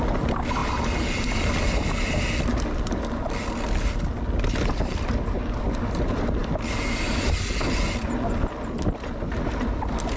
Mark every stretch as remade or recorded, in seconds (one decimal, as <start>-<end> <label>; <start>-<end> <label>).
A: 0.0-10.2 recorded